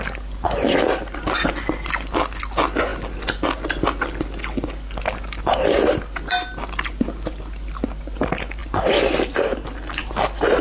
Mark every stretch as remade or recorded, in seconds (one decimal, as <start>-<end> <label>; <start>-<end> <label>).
0.0-10.6 recorded